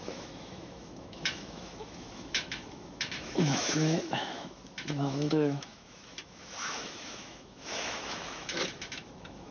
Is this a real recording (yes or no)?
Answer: no